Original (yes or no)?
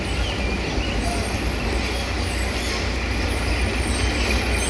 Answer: yes